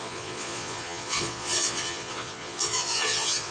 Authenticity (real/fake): fake